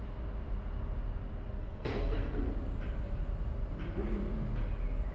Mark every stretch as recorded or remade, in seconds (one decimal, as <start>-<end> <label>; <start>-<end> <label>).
0.0-1.6 recorded; 1.6-2.5 remade; 2.5-5.1 recorded